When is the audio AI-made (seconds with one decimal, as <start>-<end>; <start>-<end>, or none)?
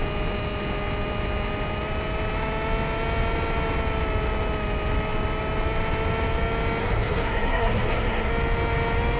6.8-8.3